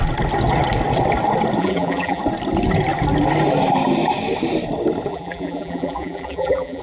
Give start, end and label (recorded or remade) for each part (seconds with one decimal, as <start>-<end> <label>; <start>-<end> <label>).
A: 0.0-1.6 recorded; 1.6-2.2 remade; 2.2-5.1 recorded; 5.1-6.8 remade